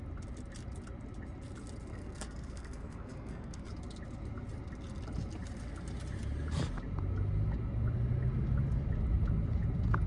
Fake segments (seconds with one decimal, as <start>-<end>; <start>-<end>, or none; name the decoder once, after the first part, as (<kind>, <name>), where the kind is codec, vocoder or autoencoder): 1.9-3.7 (codec, SNAC)